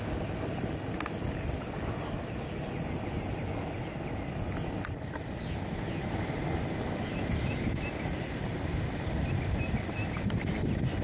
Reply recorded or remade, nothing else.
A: recorded